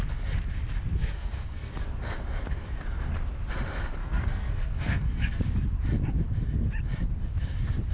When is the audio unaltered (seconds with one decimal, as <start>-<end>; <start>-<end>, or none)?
0.0-1.0; 1.7-4.0; 5.4-7.9